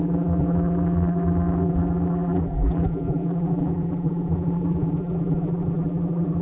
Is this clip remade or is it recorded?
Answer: remade